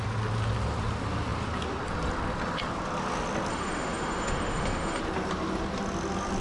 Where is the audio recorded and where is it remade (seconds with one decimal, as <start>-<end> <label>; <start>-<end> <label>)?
0.0-3.5 recorded; 3.5-5.0 remade; 5.0-6.4 recorded